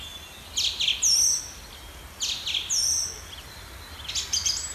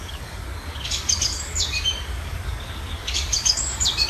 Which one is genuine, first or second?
first